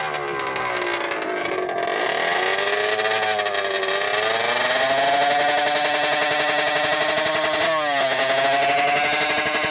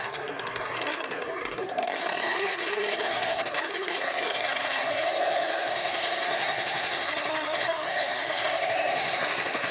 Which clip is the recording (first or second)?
first